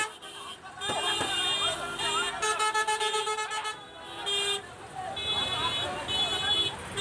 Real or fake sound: real